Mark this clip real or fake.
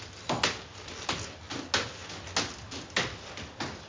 real